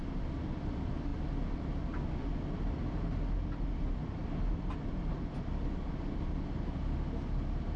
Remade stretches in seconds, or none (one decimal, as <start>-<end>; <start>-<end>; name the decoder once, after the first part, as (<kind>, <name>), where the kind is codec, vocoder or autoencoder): none